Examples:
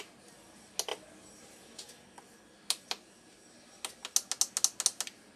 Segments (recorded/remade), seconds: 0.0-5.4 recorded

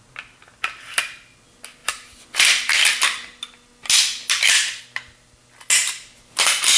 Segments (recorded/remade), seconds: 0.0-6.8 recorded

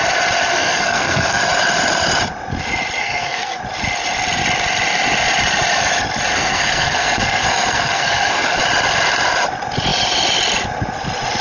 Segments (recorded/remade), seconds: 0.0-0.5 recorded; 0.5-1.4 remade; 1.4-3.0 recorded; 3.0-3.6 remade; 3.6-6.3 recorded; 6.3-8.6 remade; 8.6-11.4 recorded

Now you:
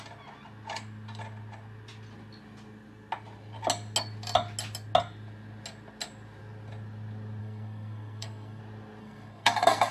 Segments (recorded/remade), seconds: 0.0-7.4 recorded; 7.4-8.6 remade; 8.6-9.0 recorded; 9.0-9.9 remade

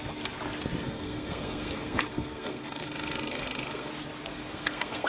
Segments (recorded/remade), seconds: 0.0-0.8 recorded; 0.8-3.9 remade; 3.9-4.3 recorded; 4.3-5.1 remade

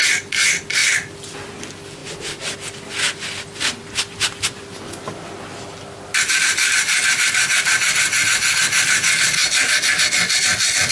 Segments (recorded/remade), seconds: 0.0-10.9 recorded

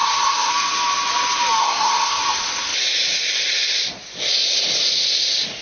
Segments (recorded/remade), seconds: 0.0-0.5 remade; 0.5-1.6 recorded; 1.6-2.2 remade; 2.2-5.6 recorded